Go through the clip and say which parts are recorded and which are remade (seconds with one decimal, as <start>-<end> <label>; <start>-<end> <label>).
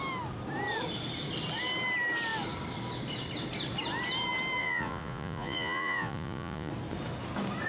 0.0-4.6 recorded; 4.6-6.7 remade; 6.7-7.7 recorded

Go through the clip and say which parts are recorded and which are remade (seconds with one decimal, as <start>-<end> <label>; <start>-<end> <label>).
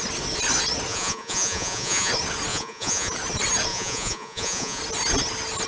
0.0-0.9 recorded; 0.9-2.1 remade; 2.1-2.5 recorded; 2.5-3.1 remade; 3.1-3.7 recorded; 3.7-4.8 remade; 4.8-5.7 recorded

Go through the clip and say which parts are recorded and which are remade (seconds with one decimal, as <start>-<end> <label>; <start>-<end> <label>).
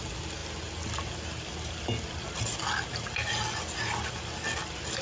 0.0-5.0 recorded